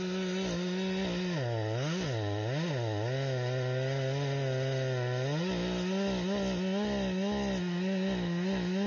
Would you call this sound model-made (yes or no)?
no